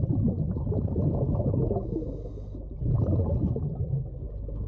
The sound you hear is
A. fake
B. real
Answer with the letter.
B